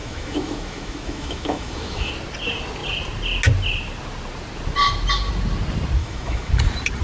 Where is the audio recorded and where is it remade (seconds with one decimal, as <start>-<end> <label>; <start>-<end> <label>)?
0.0-2.1 remade; 2.1-6.0 recorded; 6.0-6.5 remade; 6.5-7.0 recorded